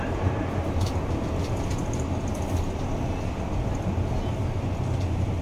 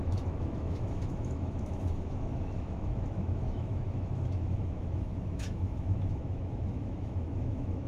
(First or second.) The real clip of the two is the first